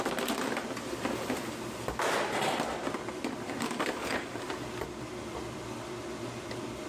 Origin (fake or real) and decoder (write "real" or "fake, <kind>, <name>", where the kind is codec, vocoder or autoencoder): real